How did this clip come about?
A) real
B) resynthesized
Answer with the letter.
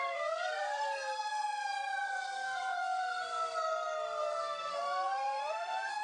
B